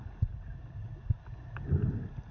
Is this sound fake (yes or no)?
no